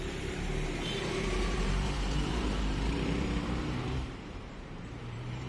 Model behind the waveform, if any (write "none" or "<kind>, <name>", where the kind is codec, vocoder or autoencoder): vocoder, BigVGAN v2